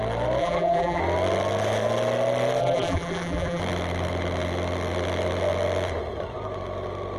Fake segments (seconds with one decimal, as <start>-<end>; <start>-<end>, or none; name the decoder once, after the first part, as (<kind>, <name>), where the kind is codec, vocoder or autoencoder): 0.4-1.0 (vocoder, BigVGAN v2); 2.6-3.6